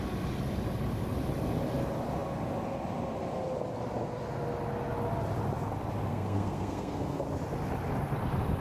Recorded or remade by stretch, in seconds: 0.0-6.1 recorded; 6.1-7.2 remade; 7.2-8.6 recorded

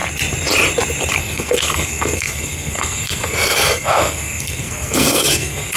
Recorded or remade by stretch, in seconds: 0.0-1.2 recorded; 1.2-5.8 remade

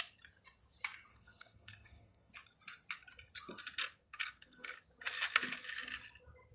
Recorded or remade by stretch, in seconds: 0.0-1.1 recorded; 1.1-2.3 remade; 2.3-4.0 recorded; 4.0-4.8 remade; 4.8-6.5 recorded

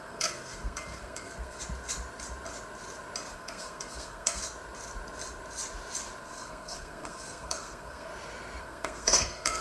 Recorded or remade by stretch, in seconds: 0.0-1.6 remade; 1.6-3.3 recorded; 3.3-4.4 remade; 4.4-6.2 recorded; 6.2-8.1 remade; 8.1-8.6 recorded; 8.6-9.6 remade

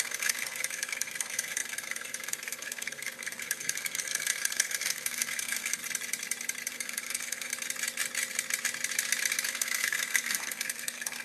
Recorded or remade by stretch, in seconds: 0.0-5.8 remade; 5.8-6.7 recorded; 6.7-7.5 remade; 7.5-9.5 recorded; 9.5-11.2 remade

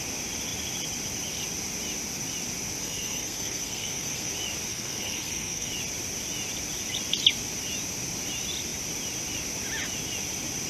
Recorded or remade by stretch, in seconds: 0.0-2.8 recorded; 2.8-4.3 remade; 4.3-4.7 recorded; 4.7-5.7 remade; 5.7-10.7 recorded

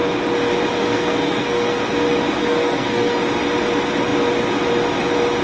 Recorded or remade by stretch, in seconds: 0.0-0.8 recorded; 0.8-1.8 remade; 1.8-2.4 recorded; 2.4-3.2 remade; 3.2-5.4 recorded

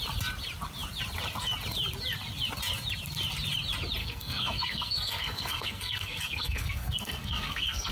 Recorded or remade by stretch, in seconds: 0.0-4.0 recorded; 4.0-7.9 remade